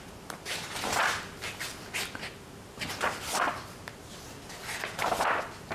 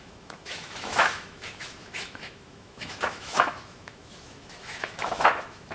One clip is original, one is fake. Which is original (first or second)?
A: first